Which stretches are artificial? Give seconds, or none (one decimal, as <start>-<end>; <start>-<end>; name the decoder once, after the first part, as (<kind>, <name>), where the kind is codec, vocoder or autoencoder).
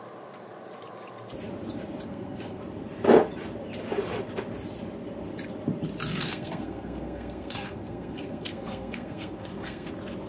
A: 2.1-2.6 (codec, SNAC); 6.1-9.9